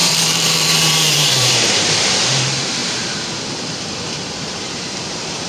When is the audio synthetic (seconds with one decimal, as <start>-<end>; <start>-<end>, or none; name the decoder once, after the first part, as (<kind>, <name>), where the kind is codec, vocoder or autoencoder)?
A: 0.0-2.8 (vocoder, BigVGAN v2); 4.5-5.5